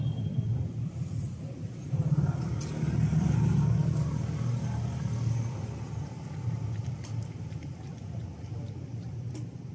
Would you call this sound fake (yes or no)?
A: no